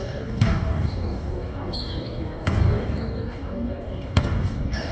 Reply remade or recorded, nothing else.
remade